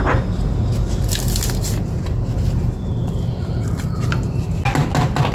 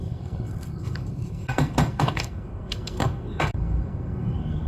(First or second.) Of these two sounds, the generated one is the second